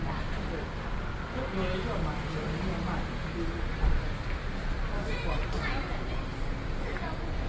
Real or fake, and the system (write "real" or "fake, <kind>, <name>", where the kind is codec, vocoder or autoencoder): real